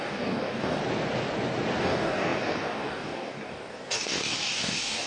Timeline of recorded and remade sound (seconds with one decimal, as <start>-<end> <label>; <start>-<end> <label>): 0.0-0.8 remade; 0.8-1.8 recorded; 1.8-5.1 remade